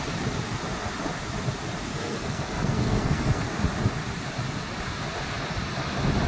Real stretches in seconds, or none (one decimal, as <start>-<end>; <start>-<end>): 0.0-1.9; 3.5-6.3